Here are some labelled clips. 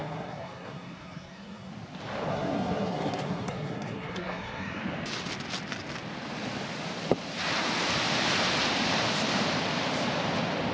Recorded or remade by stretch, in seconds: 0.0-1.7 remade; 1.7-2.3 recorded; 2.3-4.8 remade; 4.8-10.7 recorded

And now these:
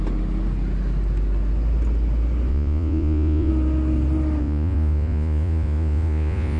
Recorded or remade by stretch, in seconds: 0.0-2.5 recorded; 2.5-3.5 remade; 3.5-4.4 recorded; 4.4-6.6 remade

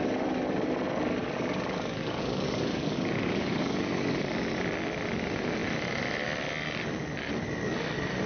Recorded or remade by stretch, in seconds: 0.0-1.2 recorded; 1.2-4.1 remade; 4.1-8.3 recorded

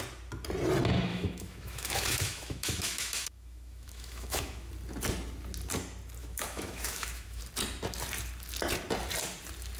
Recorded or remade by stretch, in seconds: 0.0-1.1 recorded; 1.1-4.7 remade; 4.7-6.2 recorded; 6.2-7.4 remade; 7.4-9.8 recorded

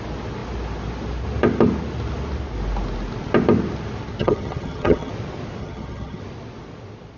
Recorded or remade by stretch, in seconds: 0.0-4.2 recorded; 4.2-5.1 remade; 5.1-5.6 recorded; 5.6-6.2 remade; 6.2-7.2 recorded